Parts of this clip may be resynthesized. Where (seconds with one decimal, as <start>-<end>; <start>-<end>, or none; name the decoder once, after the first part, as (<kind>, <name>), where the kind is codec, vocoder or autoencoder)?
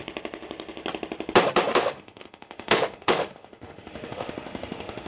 1.7-5.1 (autoencoder, DAC-VAE)